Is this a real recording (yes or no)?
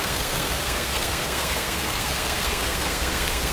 no